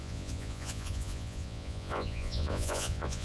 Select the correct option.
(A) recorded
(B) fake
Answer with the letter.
B